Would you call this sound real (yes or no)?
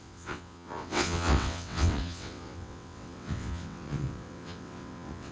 no